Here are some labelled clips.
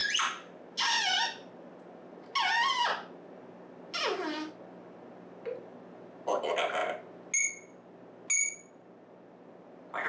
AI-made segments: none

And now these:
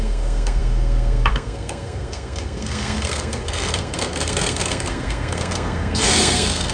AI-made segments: 0.0-6.7

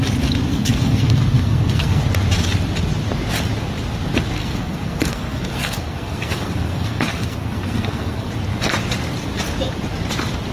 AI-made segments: 0.5-2.0; 4.4-8.3

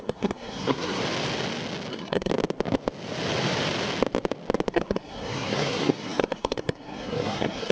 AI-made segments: 0.0-1.0; 1.9-2.3; 4.7-7.7